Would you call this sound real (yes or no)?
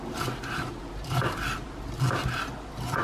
yes